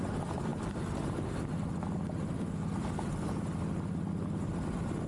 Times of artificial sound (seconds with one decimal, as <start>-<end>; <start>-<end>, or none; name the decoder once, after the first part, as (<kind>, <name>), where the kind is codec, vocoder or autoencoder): none